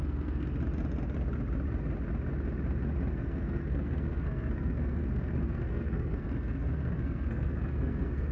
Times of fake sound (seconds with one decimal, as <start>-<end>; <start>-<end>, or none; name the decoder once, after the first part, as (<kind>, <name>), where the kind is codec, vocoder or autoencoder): 0.0-0.5 (codec, SNAC); 3.1-8.3